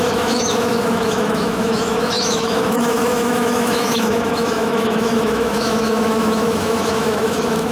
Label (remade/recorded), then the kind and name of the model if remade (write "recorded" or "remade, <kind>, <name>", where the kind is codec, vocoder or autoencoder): remade, autoencoder, DAC-VAE